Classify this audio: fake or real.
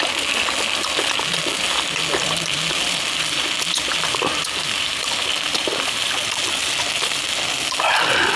real